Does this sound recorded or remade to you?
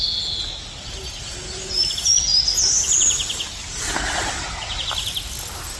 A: recorded